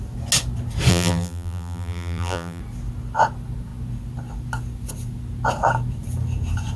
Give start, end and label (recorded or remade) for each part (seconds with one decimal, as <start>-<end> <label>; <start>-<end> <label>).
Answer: 0.0-0.9 recorded; 0.9-2.6 remade; 2.6-6.8 recorded